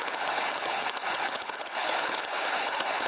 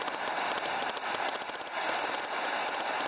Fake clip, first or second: first